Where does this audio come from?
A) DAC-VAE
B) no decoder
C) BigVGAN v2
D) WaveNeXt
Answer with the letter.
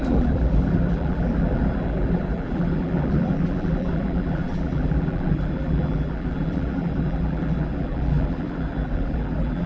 C